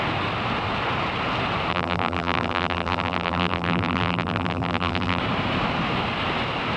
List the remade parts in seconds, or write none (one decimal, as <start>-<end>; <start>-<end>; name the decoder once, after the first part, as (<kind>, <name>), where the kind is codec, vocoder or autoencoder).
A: 1.7-5.2 (vocoder, BigVGAN v2)